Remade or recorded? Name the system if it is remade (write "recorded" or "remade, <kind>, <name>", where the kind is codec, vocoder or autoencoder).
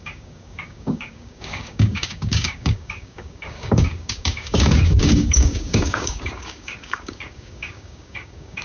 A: remade, codec, DAC